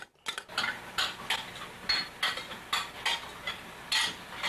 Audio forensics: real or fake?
real